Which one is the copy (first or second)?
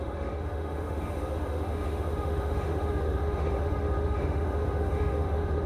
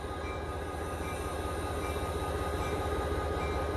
first